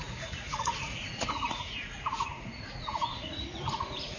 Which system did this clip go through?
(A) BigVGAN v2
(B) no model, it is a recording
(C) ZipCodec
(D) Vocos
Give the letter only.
D